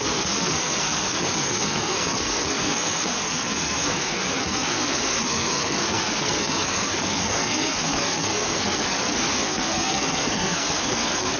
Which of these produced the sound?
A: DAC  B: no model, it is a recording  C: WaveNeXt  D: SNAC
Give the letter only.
D